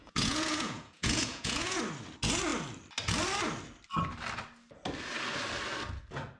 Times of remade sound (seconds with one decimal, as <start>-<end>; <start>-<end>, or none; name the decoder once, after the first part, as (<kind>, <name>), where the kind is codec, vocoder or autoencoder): 0.0-1.8 (vocoder, Vocos)